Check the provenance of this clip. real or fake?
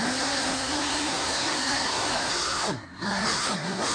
fake